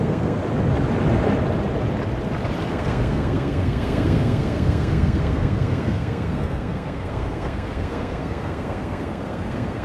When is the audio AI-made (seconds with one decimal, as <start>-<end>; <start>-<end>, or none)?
0.0-0.4; 2.7-9.8